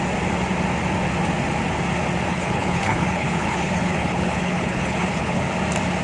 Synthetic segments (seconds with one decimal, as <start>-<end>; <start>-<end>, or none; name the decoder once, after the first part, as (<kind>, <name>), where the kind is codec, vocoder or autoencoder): 2.3-5.4 (codec, HILCodec)